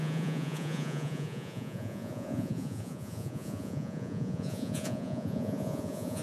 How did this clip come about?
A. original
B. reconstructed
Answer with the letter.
B